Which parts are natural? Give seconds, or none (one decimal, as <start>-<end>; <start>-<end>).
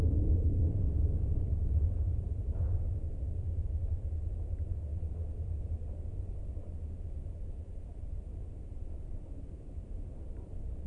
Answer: 4.9-6.5